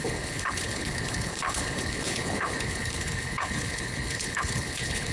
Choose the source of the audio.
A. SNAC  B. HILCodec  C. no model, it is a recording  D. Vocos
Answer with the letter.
B